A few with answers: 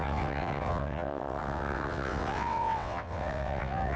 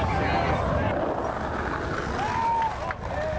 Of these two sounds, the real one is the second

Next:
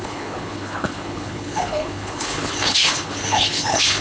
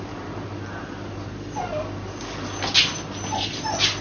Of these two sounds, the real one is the second